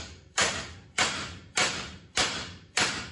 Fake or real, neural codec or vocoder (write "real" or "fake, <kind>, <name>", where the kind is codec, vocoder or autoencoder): fake, vocoder, BigVGAN v2